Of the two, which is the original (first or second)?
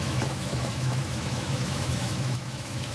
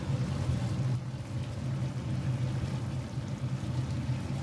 second